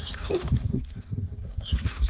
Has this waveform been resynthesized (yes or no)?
yes